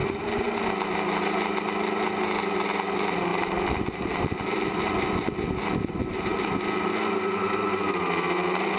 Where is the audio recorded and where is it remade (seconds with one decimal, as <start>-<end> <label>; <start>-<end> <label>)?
0.0-0.6 remade; 0.6-3.3 recorded; 3.3-4.8 remade; 4.8-8.8 recorded